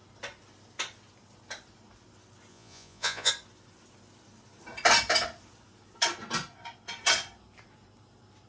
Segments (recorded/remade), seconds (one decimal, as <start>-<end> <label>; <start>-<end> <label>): 0.0-2.5 recorded; 2.5-3.3 remade; 3.3-8.5 recorded